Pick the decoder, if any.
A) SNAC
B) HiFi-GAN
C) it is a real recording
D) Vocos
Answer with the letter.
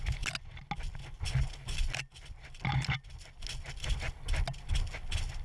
C